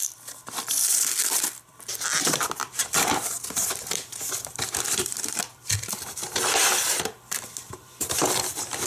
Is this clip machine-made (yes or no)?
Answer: yes